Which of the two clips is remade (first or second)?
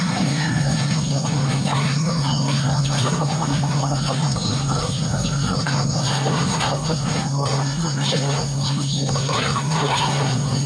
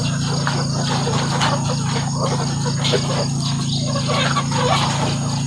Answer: first